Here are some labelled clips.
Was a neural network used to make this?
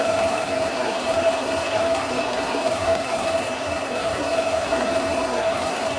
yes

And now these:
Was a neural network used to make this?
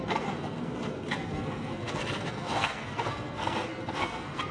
yes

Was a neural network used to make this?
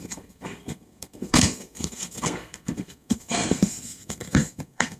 yes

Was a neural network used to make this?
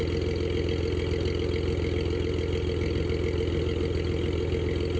no